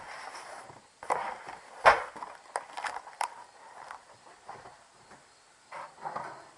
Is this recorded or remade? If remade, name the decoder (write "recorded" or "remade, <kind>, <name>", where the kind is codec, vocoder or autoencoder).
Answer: recorded